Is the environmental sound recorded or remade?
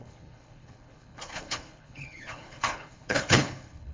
remade